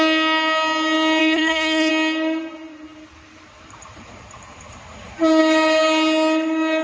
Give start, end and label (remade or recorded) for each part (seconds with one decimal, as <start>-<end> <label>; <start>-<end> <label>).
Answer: 0.0-1.2 recorded; 1.2-1.9 remade; 1.9-6.8 recorded